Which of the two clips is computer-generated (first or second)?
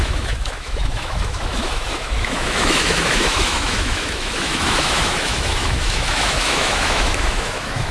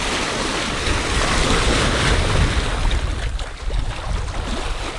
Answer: first